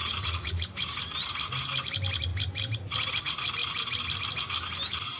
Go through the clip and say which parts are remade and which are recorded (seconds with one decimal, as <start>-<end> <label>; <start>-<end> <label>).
0.0-0.6 remade; 0.6-5.2 recorded